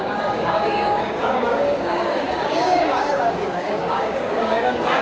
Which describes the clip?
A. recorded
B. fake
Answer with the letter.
B